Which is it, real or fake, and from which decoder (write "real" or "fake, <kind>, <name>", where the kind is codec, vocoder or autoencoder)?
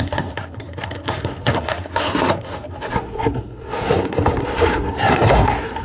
fake, codec, SNAC